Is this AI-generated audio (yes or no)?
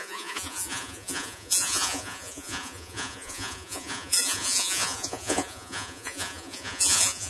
yes